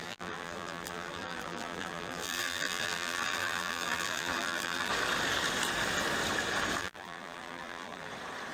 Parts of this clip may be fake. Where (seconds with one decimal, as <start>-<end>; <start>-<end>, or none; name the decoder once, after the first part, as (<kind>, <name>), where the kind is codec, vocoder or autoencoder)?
0.0-4.9 (vocoder, BigVGAN v2); 6.8-8.1